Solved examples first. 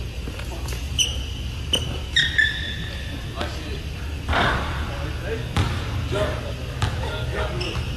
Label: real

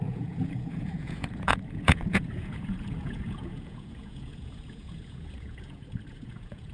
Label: fake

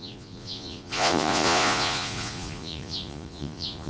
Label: fake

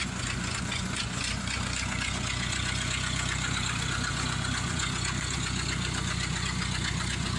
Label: fake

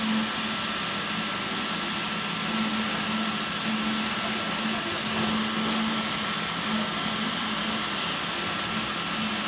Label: real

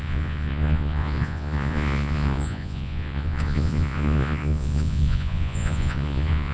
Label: fake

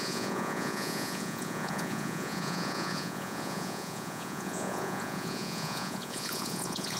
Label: fake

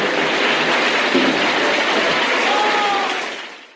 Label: real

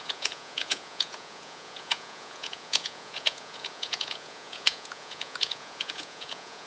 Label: fake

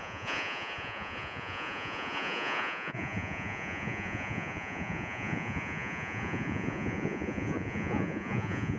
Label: fake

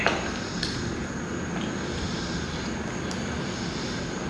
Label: real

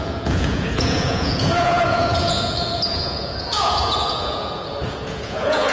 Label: fake